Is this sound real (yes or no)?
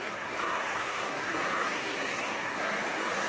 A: no